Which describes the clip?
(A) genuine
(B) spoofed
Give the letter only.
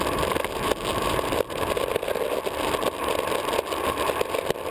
B